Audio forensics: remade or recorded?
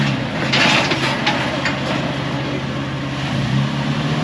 recorded